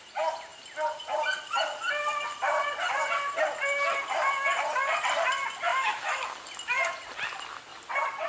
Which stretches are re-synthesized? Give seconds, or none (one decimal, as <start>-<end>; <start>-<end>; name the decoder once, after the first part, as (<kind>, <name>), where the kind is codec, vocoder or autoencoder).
5.7-6.3 (autoencoder, DAC-VAE)